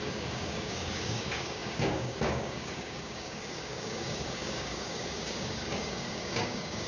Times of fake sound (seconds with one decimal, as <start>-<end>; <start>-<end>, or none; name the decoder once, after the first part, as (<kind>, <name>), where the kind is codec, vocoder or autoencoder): 0.0-6.9 (codec, DAC)